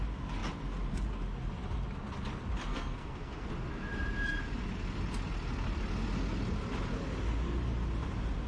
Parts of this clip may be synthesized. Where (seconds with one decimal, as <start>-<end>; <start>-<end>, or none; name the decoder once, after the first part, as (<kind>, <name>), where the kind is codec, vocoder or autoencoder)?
2.7-3.5 (codec, SNAC)